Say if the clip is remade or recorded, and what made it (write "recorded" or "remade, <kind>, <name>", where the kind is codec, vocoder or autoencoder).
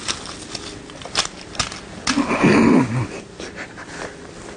recorded